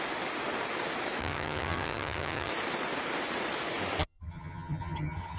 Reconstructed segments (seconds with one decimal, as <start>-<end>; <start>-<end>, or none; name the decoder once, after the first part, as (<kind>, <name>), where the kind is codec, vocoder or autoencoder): 1.2-2.5 (vocoder, HiFi-GAN); 4.0-5.4